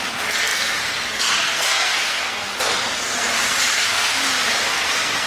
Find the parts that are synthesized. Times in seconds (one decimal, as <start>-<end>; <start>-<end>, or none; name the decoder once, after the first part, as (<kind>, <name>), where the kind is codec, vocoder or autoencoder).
0.0-4.2 (codec, SNAC); 4.7-5.3